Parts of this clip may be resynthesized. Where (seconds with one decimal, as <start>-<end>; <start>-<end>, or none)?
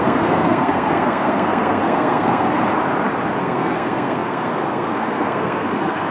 0.0-2.5; 3.4-6.1